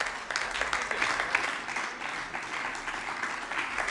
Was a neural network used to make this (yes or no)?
no